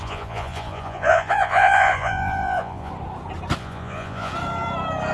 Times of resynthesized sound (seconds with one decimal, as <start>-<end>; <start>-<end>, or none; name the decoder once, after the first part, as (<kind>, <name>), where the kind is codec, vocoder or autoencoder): 0.0-2.9 (vocoder, Vocos); 3.6-4.3